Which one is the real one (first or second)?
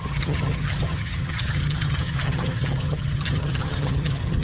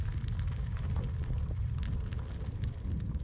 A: second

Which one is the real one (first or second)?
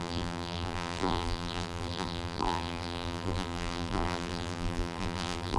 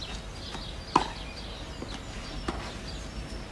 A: second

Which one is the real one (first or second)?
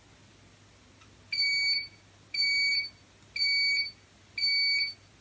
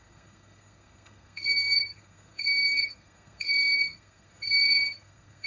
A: first